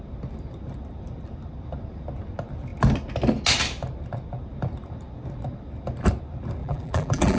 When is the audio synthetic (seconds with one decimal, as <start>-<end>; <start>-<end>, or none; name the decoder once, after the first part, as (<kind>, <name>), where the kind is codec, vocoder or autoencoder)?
6.6-7.4 (vocoder, BigVGAN v2)